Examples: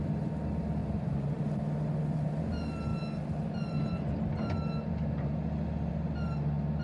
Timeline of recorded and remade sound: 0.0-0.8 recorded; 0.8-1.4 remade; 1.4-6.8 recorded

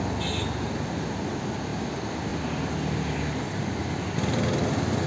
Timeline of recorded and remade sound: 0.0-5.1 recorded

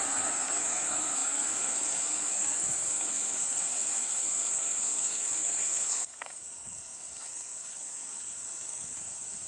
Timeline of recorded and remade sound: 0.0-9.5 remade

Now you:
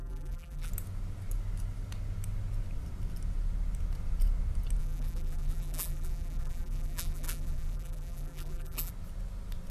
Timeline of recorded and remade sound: 0.0-0.7 remade; 0.7-4.8 recorded; 4.8-8.9 remade; 8.9-9.7 recorded

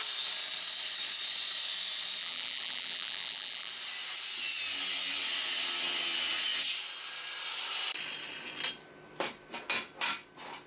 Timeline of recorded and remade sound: 0.0-2.2 recorded; 2.2-3.7 remade; 3.7-10.7 recorded

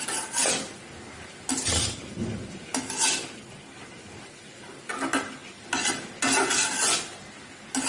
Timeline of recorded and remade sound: 0.0-7.9 recorded